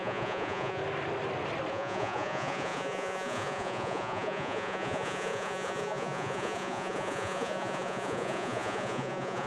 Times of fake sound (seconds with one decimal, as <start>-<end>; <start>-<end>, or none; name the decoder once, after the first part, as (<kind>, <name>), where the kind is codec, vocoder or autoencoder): 0.0-0.8 (vocoder, Vocos); 1.7-9.5